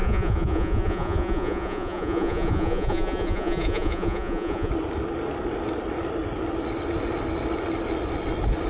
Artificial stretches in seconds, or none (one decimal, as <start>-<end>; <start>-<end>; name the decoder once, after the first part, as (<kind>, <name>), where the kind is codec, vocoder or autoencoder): 0.0-4.7 (vocoder, Vocos)